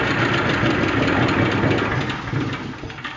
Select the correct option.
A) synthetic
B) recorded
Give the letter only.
B